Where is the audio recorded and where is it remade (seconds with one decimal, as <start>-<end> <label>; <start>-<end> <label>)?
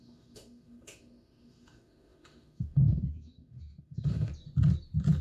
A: 0.0-4.3 remade; 4.3-5.2 recorded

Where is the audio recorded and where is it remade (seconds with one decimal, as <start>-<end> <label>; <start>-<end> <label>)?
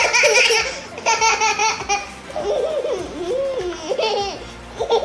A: 0.0-5.0 recorded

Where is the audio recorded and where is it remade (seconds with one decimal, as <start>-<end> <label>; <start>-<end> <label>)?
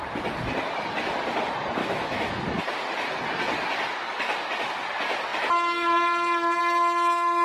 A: 0.0-1.8 recorded; 1.8-2.4 remade; 2.4-7.4 recorded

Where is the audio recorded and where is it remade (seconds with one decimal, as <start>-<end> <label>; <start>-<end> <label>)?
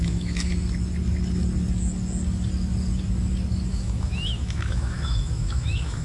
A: 0.0-0.5 remade; 0.5-3.7 recorded; 3.7-6.0 remade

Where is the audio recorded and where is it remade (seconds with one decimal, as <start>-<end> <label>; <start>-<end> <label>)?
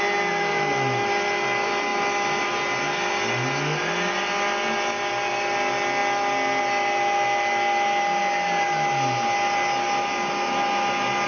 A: 0.0-0.5 recorded; 0.5-1.1 remade; 1.1-11.3 recorded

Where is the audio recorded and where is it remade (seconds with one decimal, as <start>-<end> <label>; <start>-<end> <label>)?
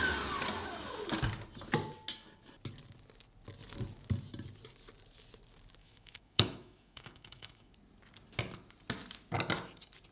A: 0.0-5.8 recorded; 5.8-7.7 remade; 7.7-10.1 recorded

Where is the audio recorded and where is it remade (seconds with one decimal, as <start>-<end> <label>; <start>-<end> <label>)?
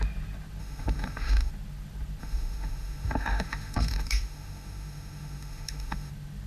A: 0.0-0.6 recorded; 0.6-1.5 remade; 1.5-2.2 recorded; 2.2-6.1 remade; 6.1-6.5 recorded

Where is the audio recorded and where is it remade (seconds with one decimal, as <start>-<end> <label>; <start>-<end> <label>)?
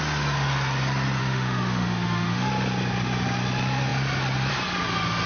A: 0.0-1.2 recorded; 1.2-2.5 remade; 2.5-5.3 recorded